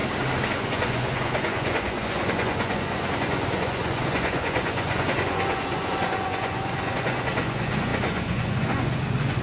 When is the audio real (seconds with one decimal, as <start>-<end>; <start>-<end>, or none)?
0.0-0.5

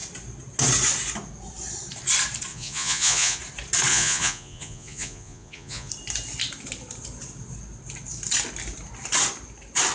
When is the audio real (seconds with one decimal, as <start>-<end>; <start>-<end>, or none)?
0.0-2.5; 3.4-3.9; 5.9-9.9

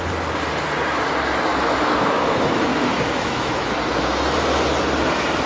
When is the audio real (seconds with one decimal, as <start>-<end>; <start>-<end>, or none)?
0.0-1.5; 3.7-5.5